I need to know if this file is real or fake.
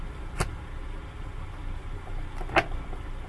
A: real